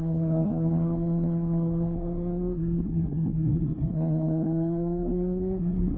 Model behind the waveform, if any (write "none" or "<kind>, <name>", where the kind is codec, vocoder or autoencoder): codec, SNAC